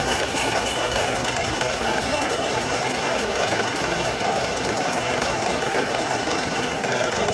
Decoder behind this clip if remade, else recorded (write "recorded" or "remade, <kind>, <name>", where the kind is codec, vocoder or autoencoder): remade, codec, SNAC